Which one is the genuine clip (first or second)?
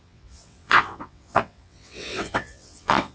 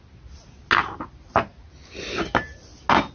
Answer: second